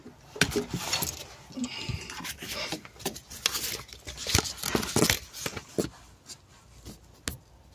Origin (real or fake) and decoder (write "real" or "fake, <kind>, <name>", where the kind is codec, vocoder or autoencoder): real